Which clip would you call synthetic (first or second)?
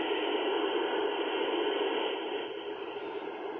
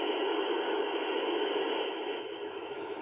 second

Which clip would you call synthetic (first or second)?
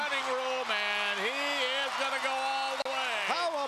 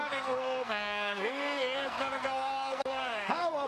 second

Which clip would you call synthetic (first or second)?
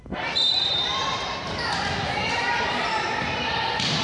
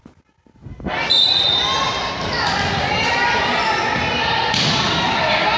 first